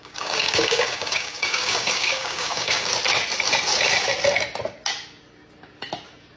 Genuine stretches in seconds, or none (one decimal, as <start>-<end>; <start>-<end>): 2.9-6.4